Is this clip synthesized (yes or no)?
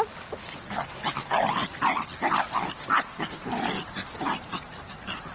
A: no